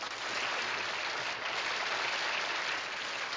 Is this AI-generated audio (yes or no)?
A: no